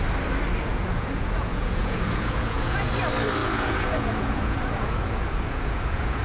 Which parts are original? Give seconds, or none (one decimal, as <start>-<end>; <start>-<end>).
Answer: 0.0-0.7; 2.9-3.4